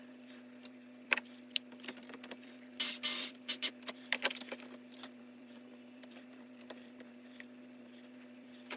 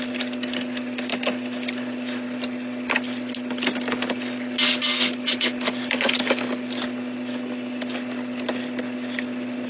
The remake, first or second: first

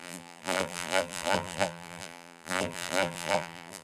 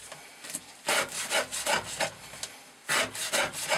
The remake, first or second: first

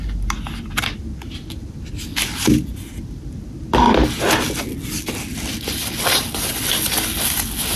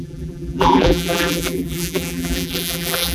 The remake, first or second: second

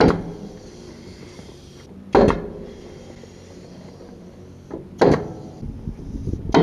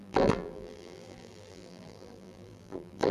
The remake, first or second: second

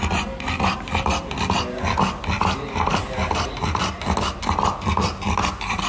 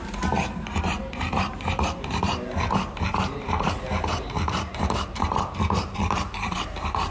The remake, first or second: second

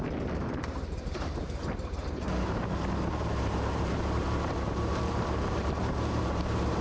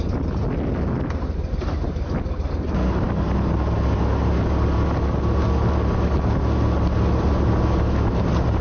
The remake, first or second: first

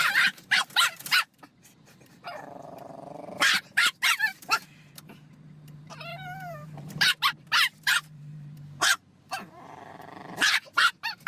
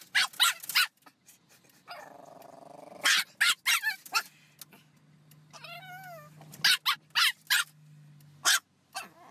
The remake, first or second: first